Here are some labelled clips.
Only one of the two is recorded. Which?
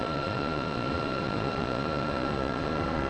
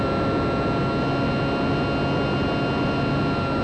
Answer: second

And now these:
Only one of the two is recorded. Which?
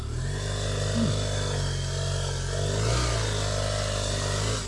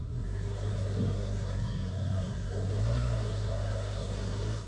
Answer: first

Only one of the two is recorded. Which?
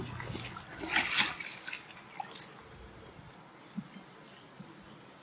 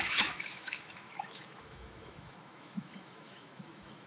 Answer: first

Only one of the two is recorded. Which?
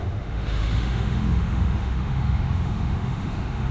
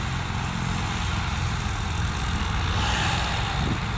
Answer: second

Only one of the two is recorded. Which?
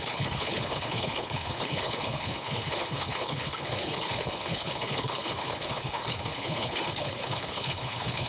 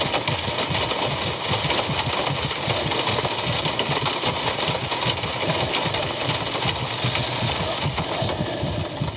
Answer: second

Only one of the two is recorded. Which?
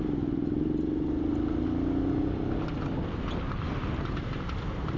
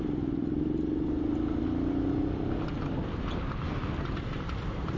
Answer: first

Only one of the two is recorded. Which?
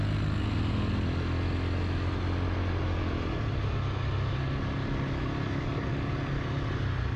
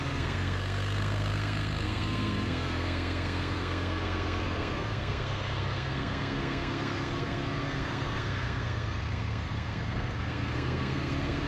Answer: first